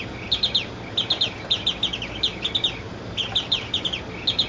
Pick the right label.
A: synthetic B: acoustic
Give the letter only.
B